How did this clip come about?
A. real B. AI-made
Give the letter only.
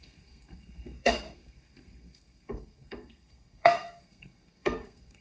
B